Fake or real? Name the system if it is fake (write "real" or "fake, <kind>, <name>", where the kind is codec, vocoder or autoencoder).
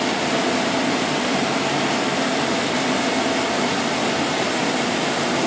real